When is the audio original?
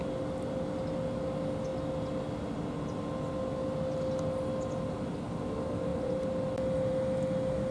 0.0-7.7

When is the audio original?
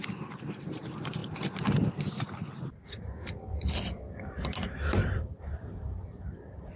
1.2-3.3